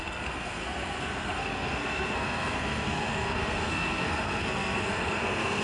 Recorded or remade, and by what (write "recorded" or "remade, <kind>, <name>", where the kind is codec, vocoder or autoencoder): remade, codec, SNAC